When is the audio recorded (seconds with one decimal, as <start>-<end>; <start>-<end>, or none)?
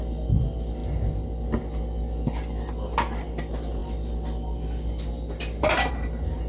0.0-6.5